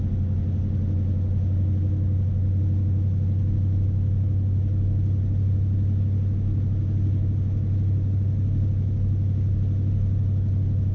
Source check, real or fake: real